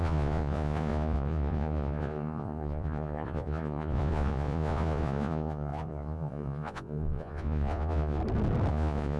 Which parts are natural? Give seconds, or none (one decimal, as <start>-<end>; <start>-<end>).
8.2-8.7